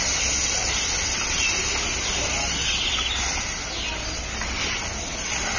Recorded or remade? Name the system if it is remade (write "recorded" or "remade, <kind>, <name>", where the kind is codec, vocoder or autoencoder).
recorded